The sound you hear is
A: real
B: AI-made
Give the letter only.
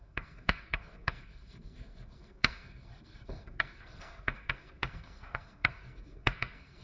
B